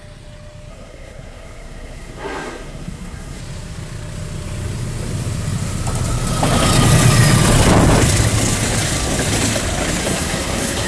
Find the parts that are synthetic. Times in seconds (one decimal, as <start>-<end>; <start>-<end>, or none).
0.7-3.4; 10.0-10.9